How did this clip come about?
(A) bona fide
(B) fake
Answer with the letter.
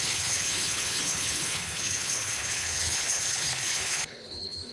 B